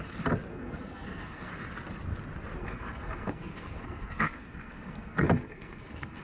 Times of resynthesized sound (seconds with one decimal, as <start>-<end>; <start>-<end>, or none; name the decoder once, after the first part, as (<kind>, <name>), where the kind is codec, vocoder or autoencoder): 0.5-1.5 (codec, SNAC); 2.6-6.2